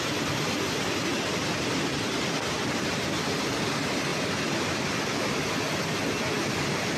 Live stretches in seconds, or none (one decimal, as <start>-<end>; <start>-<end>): 0.0-7.0